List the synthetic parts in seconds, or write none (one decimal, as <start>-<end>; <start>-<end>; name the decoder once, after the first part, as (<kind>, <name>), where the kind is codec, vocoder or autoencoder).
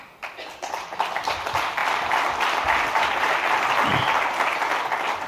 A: none